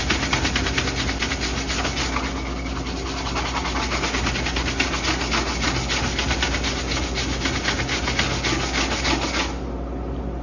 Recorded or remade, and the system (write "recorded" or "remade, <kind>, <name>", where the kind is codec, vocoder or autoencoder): recorded